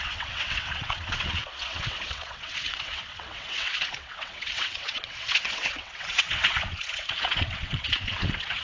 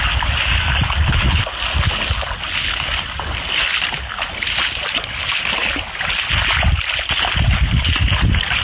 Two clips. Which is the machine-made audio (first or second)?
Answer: first